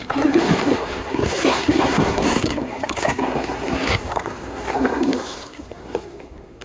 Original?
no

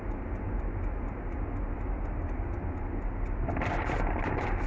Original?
yes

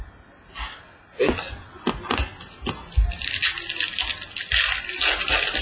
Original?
yes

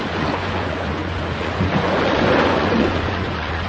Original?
no